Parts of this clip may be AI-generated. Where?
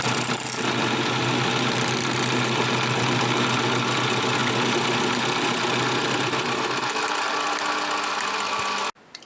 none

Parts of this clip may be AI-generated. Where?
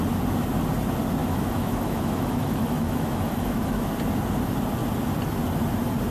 1.2-3.9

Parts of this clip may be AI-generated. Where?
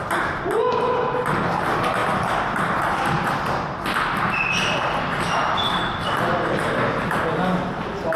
none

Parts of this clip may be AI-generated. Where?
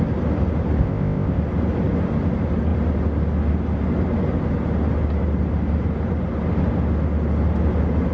0.8-1.4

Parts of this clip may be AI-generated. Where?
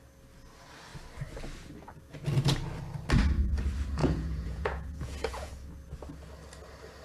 4.0-5.5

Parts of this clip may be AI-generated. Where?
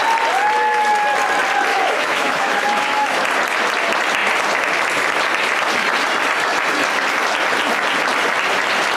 1.7-3.2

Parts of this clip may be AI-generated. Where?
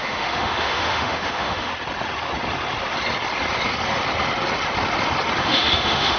0.0-1.7; 5.4-6.2